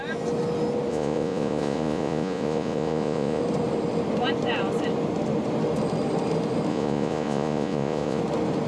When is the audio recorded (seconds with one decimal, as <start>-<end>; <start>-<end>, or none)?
0.0-0.9; 3.4-6.7; 8.2-8.7